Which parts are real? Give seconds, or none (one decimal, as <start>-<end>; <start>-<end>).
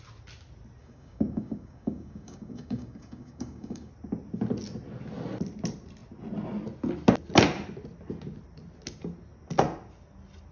0.0-0.8; 3.9-10.5